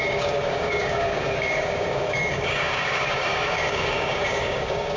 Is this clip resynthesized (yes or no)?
yes